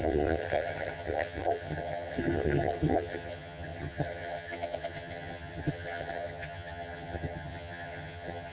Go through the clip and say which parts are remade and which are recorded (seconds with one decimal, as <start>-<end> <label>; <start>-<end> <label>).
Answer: 0.0-8.5 remade